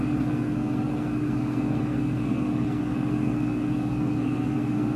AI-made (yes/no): yes